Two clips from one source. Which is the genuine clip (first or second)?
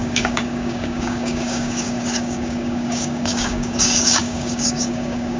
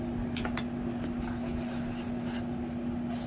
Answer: second